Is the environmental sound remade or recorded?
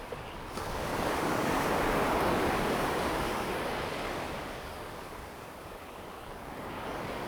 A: remade